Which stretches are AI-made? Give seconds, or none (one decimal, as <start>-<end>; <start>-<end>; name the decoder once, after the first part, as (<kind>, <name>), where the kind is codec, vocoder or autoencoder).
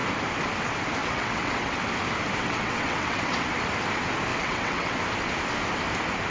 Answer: 1.0-1.8 (vocoder, WaveNeXt); 2.4-3.5; 4.3-5.0